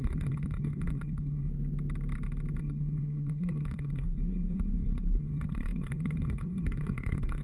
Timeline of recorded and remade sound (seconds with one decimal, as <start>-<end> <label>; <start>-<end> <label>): 0.0-1.5 remade; 1.5-2.6 recorded; 2.6-7.4 remade